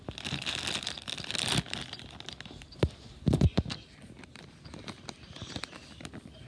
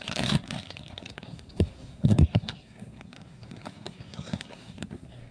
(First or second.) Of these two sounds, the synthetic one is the second